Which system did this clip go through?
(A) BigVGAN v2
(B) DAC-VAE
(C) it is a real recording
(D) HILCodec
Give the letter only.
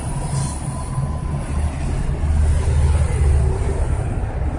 C